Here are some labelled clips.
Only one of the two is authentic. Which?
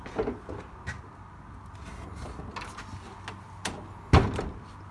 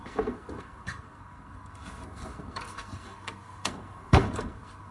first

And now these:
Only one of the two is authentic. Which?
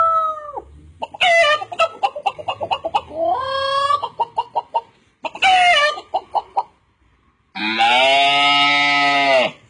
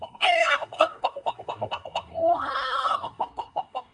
first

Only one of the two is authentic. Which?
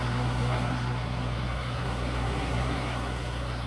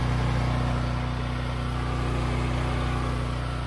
second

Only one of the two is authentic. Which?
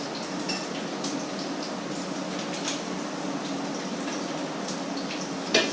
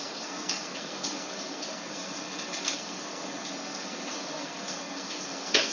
first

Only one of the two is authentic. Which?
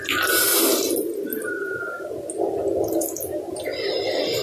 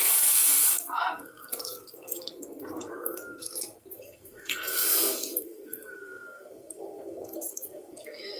first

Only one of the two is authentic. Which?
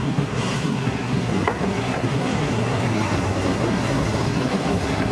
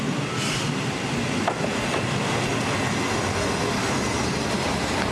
second